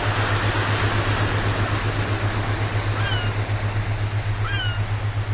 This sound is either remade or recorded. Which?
recorded